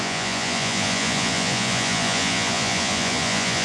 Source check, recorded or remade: remade